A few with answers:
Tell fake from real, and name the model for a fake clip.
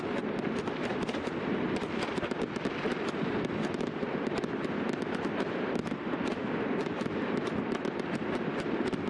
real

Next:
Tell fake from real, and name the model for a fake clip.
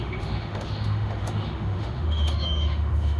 fake, autoencoder, DAC-VAE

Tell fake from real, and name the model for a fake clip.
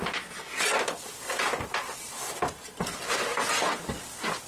real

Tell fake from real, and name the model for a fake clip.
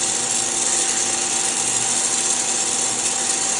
real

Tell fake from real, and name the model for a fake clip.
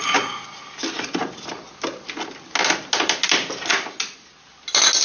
real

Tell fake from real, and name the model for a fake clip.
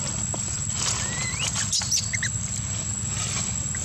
real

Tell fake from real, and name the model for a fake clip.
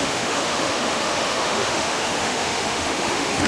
fake, autoencoder, DAC-VAE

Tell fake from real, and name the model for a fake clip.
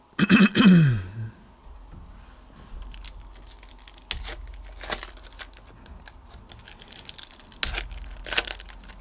real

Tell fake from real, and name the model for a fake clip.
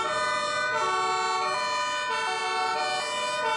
real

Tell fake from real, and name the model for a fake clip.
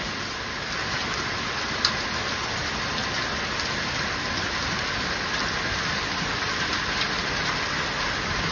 real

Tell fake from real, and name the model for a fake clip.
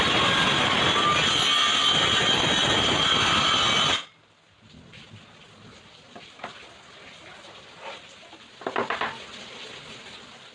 real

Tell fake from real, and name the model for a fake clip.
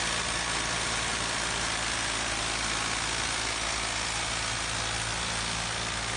real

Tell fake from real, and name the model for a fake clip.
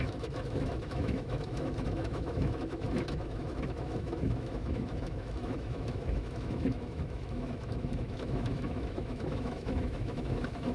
fake, autoencoder, DAC-VAE